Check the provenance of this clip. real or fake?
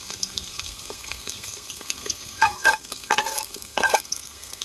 fake